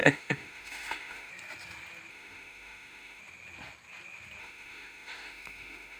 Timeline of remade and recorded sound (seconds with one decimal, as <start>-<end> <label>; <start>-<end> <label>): 0.0-1.3 remade; 1.3-2.1 recorded; 2.1-3.2 remade; 3.2-4.4 recorded; 4.4-6.0 remade